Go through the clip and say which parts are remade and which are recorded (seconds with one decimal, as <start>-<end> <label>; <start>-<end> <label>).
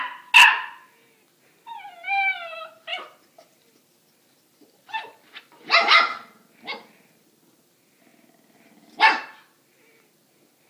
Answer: 0.0-2.9 recorded; 2.9-7.7 remade; 7.7-10.7 recorded